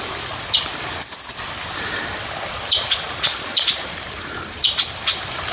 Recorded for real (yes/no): no